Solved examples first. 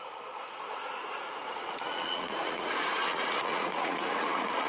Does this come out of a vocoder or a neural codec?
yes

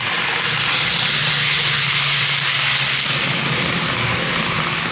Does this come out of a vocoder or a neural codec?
no